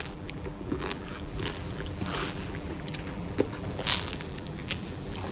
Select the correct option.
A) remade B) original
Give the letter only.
A